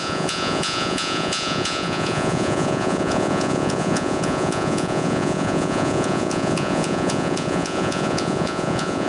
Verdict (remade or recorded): remade